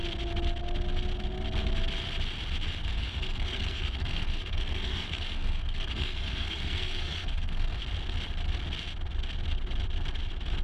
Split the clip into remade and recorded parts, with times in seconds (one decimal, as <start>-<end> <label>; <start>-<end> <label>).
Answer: 0.0-2.8 recorded; 2.8-7.8 remade; 7.8-10.6 recorded